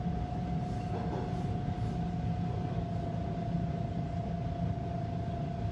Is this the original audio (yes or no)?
yes